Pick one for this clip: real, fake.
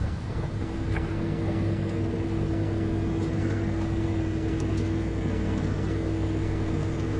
fake